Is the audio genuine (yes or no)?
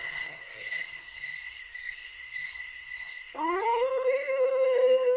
no